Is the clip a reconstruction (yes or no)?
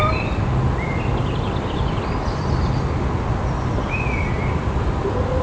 no